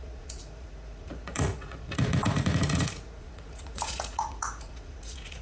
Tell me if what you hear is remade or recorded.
remade